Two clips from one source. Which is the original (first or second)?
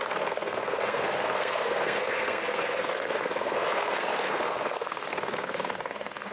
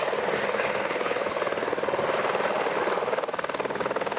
second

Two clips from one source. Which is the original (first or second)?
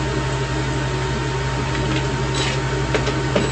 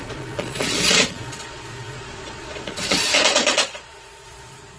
first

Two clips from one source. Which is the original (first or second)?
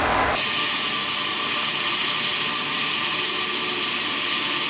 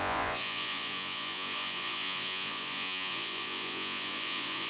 first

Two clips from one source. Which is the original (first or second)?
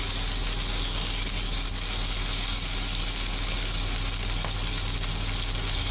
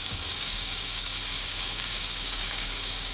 first